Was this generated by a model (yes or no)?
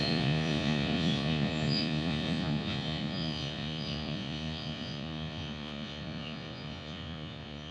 yes